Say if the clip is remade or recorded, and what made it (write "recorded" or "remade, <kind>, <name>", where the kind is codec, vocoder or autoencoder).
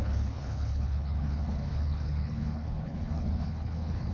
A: remade, codec, HILCodec